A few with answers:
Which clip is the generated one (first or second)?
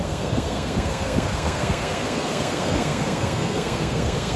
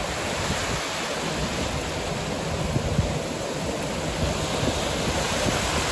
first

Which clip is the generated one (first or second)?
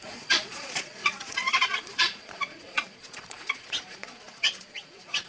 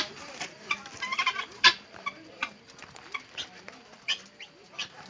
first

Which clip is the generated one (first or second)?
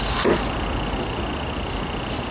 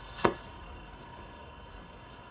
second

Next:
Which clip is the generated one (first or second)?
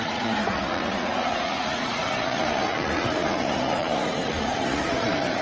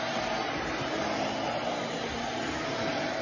first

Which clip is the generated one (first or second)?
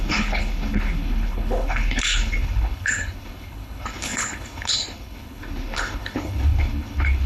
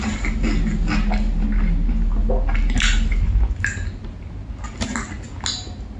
first